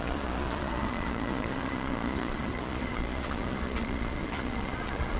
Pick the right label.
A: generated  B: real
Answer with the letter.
A